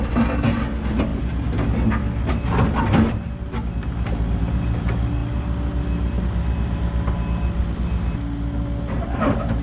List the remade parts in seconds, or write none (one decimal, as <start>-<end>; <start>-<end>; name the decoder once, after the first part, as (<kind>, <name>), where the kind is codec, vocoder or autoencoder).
none